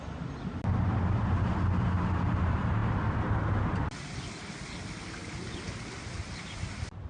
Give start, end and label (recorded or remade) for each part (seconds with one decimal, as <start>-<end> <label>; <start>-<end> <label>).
0.0-7.1 recorded